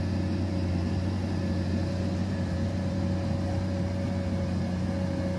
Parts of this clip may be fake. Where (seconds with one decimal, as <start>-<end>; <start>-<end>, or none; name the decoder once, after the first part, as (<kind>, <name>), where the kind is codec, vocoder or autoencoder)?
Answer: 2.2-3.0 (vocoder, BigVGAN v2)